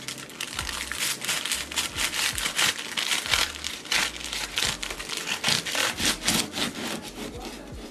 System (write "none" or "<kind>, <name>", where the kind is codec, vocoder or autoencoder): none